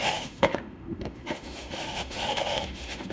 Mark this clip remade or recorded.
remade